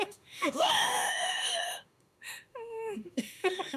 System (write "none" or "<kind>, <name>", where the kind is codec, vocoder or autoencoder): autoencoder, DAC-VAE